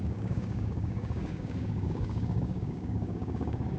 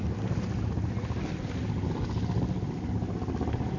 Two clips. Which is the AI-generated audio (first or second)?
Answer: first